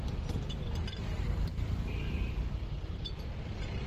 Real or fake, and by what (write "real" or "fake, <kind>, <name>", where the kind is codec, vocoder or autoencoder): fake, vocoder, BigVGAN v2